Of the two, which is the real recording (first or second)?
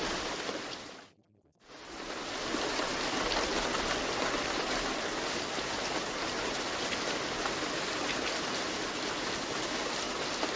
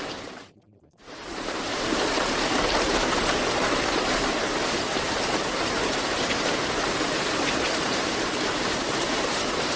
first